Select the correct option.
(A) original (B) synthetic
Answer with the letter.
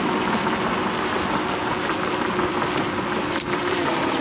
A